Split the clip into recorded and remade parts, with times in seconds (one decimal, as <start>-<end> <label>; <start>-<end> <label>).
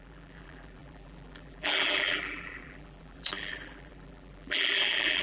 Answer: 0.0-5.2 remade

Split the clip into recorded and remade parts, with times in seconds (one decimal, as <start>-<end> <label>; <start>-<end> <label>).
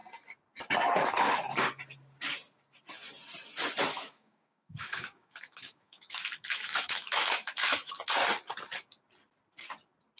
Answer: 0.0-3.9 recorded; 3.9-7.9 remade; 7.9-10.2 recorded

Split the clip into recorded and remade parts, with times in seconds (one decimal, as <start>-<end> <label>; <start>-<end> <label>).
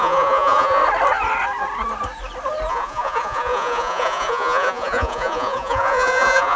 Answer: 0.0-0.8 remade; 0.8-2.7 recorded; 2.7-6.6 remade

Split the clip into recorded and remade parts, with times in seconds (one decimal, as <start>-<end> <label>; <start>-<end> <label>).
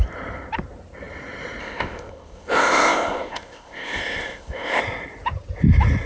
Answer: 0.0-1.6 recorded; 1.6-4.8 remade; 4.8-6.1 recorded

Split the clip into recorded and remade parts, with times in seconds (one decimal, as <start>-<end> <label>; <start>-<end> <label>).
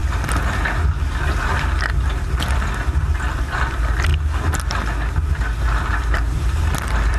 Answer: 0.0-3.3 recorded; 3.3-4.1 remade; 4.1-5.6 recorded; 5.6-7.2 remade